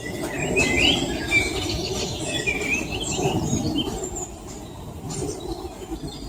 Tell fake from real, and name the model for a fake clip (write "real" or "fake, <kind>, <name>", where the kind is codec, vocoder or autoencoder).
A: fake, vocoder, BigVGAN v2